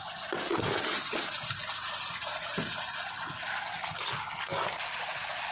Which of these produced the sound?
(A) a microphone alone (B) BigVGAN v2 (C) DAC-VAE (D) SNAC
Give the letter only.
A